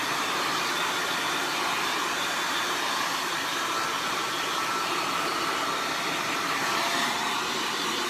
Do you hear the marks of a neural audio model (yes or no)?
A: yes